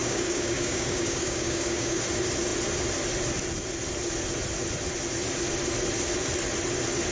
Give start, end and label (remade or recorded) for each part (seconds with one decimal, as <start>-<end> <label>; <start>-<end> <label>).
0.0-2.0 remade; 2.0-7.1 recorded